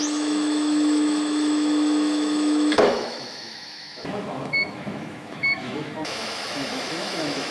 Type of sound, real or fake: fake